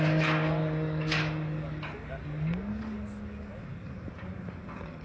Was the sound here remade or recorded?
remade